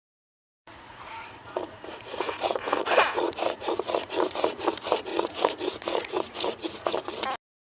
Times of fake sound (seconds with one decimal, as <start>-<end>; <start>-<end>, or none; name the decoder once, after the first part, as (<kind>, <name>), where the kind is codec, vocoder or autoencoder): 0.0-4.6 (vocoder, Vocos); 5.1-6.9